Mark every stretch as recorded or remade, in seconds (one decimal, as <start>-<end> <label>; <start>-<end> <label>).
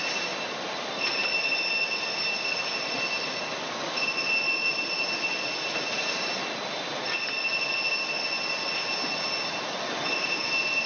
0.0-10.9 recorded